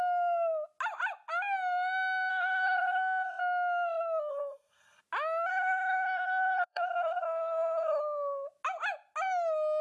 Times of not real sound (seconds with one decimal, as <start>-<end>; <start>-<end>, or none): 2.3-3.4; 4.3-5.0; 5.5-8.0